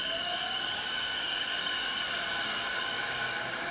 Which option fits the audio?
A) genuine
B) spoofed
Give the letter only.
B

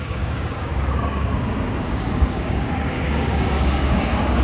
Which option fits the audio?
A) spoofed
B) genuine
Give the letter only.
A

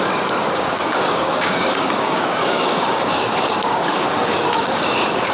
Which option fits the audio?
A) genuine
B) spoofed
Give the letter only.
B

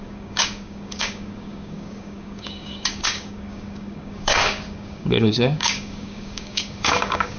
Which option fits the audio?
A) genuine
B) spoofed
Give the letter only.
B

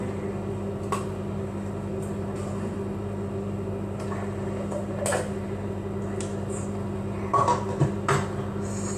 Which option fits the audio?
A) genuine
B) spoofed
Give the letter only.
A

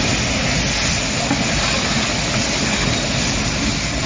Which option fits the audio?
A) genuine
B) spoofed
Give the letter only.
A